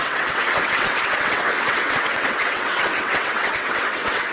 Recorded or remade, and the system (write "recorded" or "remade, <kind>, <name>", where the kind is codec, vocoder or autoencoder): remade, vocoder, WaveNeXt